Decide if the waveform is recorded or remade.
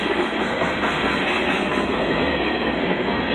remade